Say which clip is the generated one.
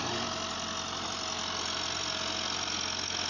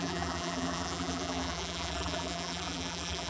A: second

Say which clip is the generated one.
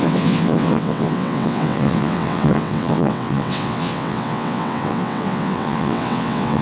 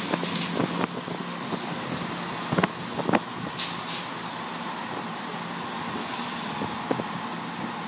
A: first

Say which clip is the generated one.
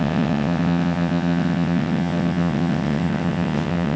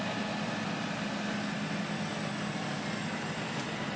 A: first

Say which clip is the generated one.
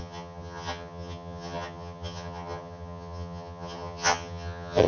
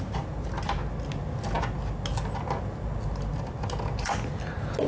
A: first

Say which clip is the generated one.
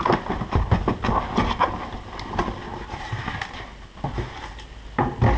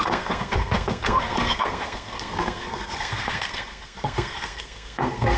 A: second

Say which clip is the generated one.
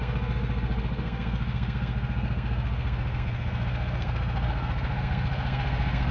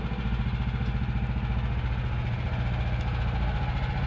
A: first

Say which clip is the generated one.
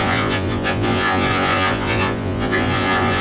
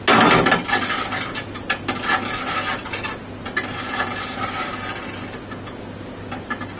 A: first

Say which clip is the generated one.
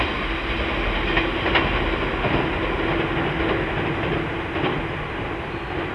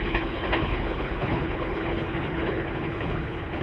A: second